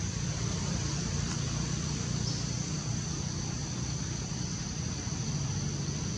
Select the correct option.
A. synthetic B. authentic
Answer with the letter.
B